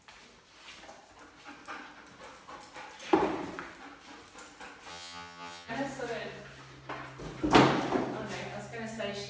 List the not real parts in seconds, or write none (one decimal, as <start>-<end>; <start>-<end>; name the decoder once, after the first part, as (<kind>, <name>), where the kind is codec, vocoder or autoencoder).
4.9-5.7 (vocoder, HiFi-GAN)